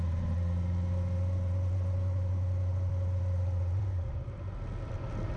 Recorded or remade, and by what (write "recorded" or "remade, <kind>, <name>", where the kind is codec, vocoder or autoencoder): recorded